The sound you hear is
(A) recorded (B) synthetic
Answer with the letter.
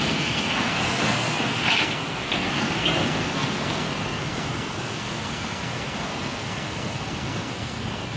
B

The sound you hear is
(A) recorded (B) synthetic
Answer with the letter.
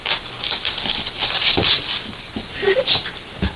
A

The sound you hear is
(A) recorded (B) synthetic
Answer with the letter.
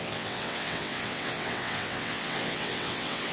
B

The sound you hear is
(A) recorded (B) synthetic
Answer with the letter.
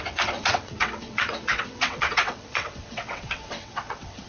B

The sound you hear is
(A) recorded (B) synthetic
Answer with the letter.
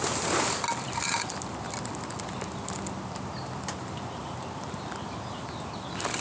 A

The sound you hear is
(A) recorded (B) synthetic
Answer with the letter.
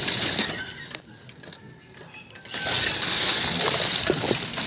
A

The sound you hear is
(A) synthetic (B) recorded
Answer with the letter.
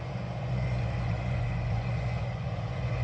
A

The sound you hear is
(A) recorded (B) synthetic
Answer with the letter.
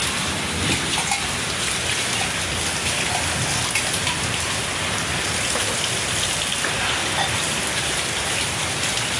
A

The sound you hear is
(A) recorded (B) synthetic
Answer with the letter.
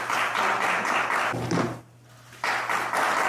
A